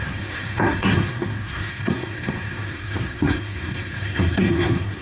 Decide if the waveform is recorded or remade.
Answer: remade